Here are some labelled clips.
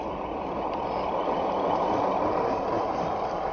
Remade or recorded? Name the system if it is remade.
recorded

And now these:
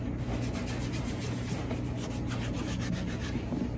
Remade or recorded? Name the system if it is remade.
recorded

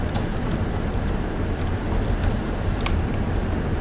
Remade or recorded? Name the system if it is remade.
remade, vocoder, BigVGAN v2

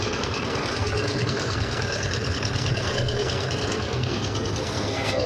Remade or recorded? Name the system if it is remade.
remade, codec, SNAC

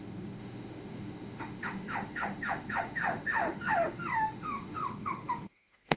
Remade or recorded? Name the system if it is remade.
remade, autoencoder, DAC-VAE